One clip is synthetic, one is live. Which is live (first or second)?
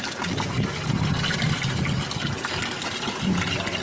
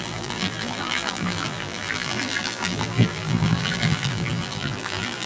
first